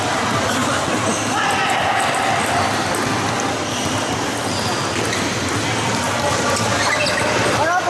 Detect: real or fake real